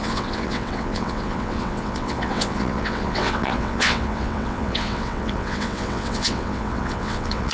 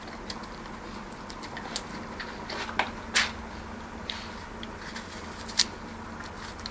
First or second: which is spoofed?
first